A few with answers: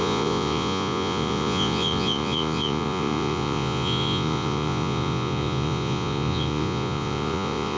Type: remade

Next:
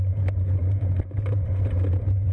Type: remade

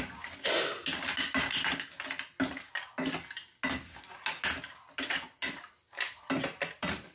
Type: recorded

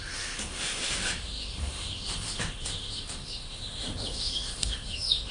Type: remade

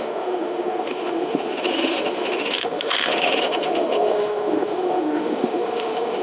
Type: remade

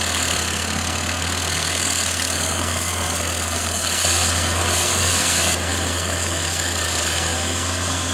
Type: remade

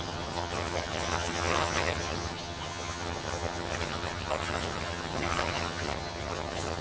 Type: remade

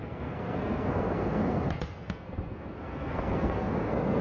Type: remade